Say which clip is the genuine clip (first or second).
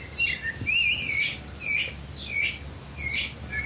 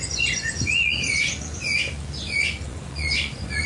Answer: first